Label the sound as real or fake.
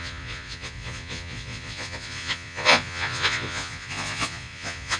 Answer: fake